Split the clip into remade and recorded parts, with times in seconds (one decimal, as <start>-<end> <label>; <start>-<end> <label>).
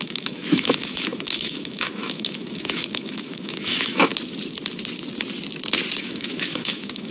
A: 0.0-4.1 remade; 4.1-6.0 recorded; 6.0-7.1 remade